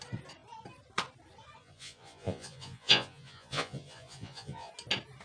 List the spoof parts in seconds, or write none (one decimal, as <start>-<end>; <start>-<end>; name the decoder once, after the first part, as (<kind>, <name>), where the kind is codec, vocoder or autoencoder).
1.6-4.7 (vocoder, Vocos)